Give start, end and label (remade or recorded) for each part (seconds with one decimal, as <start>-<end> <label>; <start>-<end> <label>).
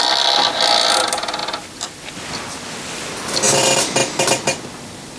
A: 0.0-5.2 recorded